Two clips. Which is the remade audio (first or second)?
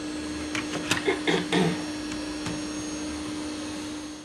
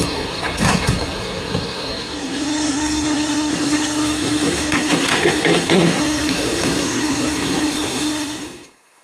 second